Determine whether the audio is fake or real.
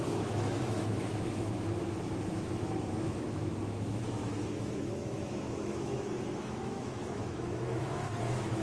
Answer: fake